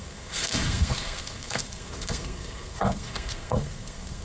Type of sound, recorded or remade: remade